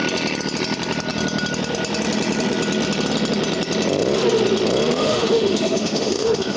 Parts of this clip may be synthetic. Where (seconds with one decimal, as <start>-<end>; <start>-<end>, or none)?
5.0-6.6